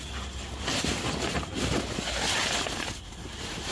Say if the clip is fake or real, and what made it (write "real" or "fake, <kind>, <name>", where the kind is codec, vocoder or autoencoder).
real